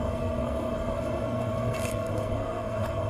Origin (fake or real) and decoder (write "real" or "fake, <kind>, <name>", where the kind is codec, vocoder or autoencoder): fake, codec, SNAC